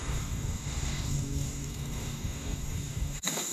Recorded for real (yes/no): no